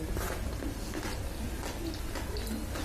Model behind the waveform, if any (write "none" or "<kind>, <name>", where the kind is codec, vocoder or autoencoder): none